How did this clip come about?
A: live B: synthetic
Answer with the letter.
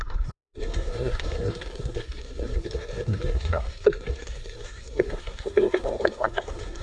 B